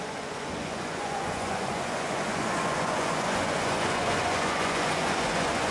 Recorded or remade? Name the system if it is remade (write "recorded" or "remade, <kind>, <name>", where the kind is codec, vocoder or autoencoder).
remade, vocoder, Vocos